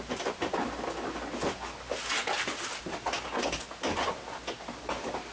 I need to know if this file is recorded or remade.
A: recorded